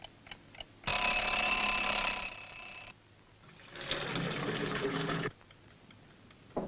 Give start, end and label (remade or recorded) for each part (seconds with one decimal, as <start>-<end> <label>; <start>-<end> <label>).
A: 0.0-4.6 recorded; 4.6-5.3 remade; 5.3-6.7 recorded

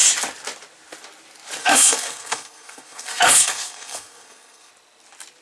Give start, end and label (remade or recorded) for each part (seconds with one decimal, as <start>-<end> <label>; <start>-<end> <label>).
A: 0.0-1.6 recorded; 1.6-4.7 remade; 4.7-5.4 recorded

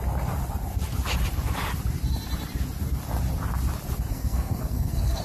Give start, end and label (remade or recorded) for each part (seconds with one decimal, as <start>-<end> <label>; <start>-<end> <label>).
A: 0.0-4.1 recorded; 4.1-5.2 remade

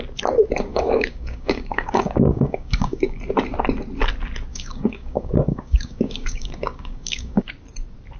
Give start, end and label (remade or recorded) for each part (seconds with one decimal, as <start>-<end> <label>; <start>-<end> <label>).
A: 0.0-0.7 recorded; 0.7-3.2 remade; 3.2-4.5 recorded; 4.5-7.5 remade; 7.5-8.2 recorded

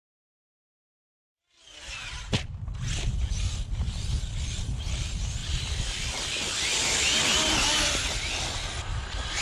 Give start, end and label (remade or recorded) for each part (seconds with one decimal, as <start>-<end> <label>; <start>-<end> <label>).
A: 0.0-9.4 recorded

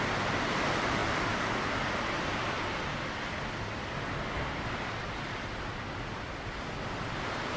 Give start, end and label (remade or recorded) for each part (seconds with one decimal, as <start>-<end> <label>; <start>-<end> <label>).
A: 0.0-7.6 recorded

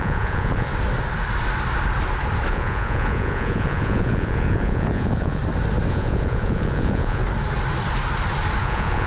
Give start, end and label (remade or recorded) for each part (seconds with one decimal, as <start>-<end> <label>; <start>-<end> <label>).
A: 0.0-0.7 remade; 0.7-2.5 recorded; 2.5-5.4 remade; 5.4-5.9 recorded; 5.9-7.2 remade; 7.2-8.6 recorded; 8.6-9.1 remade

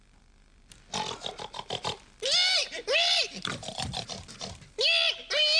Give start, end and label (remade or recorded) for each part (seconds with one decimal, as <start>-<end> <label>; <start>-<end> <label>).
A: 0.0-5.6 recorded